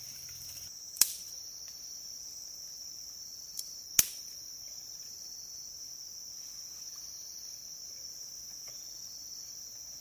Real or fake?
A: real